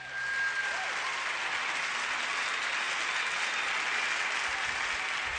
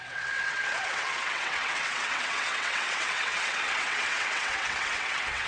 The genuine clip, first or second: first